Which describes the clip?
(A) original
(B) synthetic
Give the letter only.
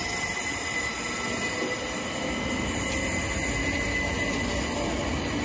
A